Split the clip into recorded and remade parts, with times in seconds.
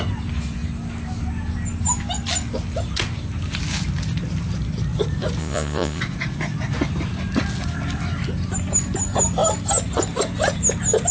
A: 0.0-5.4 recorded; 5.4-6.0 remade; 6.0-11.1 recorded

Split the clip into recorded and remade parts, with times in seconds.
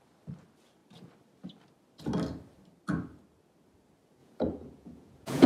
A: 0.0-4.2 recorded; 4.2-5.5 remade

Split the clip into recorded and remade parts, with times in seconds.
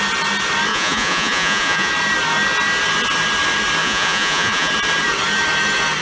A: 0.0-0.7 recorded; 0.7-1.9 remade; 1.9-3.8 recorded; 3.8-4.7 remade; 4.7-6.0 recorded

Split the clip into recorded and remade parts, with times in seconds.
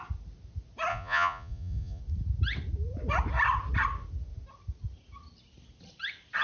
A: 0.0-0.9 recorded; 0.9-2.0 remade; 2.0-6.4 recorded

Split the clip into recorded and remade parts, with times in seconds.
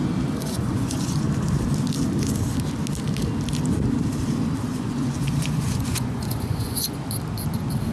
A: 0.0-0.4 recorded; 0.4-1.3 remade; 1.3-4.7 recorded; 4.7-7.0 remade; 7.0-7.9 recorded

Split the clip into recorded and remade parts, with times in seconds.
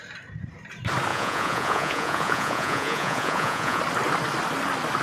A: 0.0-1.1 recorded; 1.1-3.8 remade; 3.8-5.0 recorded